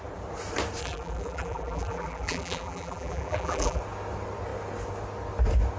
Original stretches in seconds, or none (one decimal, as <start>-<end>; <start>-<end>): 0.0-0.8; 3.8-5.8